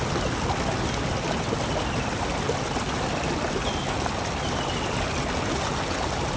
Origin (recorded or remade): recorded